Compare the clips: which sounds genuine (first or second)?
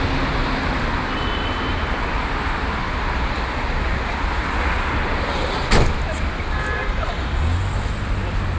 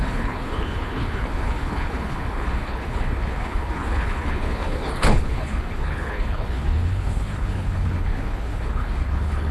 first